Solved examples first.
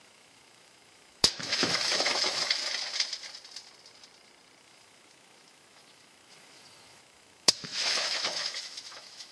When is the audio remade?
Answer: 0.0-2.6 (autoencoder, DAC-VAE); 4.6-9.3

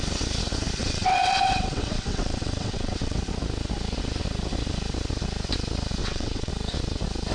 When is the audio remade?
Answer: 0.8-3.2 (vocoder, WaveNeXt); 6.0-6.5

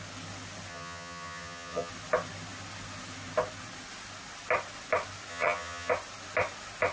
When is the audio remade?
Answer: 0.7-1.9 (vocoder, HiFi-GAN); 5.3-5.9

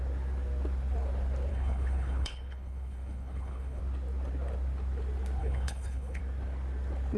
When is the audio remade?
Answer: 1.5-3.8 (codec, HILCodec); 5.4-6.2

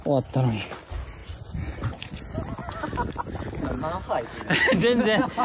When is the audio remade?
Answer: 1.2-2.2 (vocoder, Vocos)